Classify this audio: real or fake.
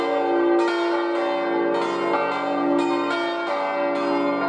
real